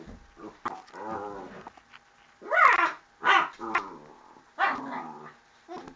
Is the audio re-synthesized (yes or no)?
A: no